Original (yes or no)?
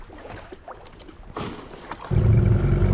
yes